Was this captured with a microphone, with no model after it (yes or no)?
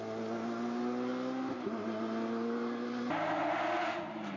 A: yes